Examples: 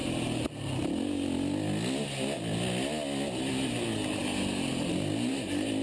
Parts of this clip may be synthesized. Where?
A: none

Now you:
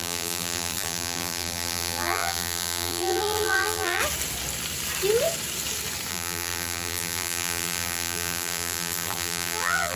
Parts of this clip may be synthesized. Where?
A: 0.0-4.0 (vocoder, BigVGAN v2); 6.1-10.0

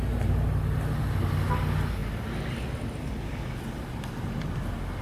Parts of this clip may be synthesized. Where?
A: none

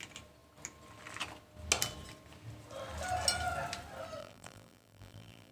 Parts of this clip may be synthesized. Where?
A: 4.2-5.5 (vocoder, BigVGAN v2)

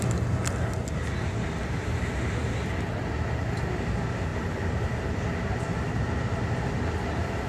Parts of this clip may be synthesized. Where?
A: none

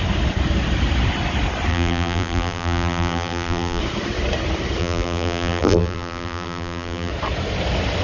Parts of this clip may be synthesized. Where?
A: 1.7-3.8 (vocoder, BigVGAN v2); 4.8-7.1